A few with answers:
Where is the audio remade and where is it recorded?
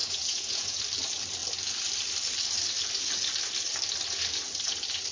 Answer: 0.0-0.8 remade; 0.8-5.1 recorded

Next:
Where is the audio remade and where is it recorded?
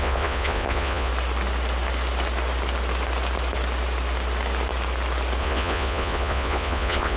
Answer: 0.0-1.1 remade; 1.1-5.4 recorded; 5.4-7.2 remade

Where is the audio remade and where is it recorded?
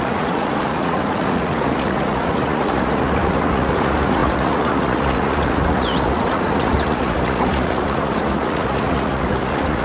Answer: 0.0-9.8 remade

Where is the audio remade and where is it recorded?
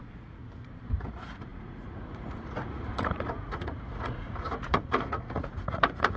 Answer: 0.0-0.4 remade; 0.4-1.0 recorded; 1.0-6.2 remade